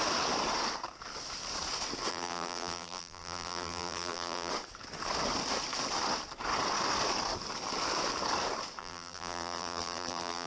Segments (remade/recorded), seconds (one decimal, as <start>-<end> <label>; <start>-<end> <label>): 0.0-2.1 recorded; 2.1-4.5 remade; 4.5-8.8 recorded; 8.8-10.5 remade